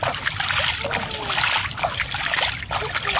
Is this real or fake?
real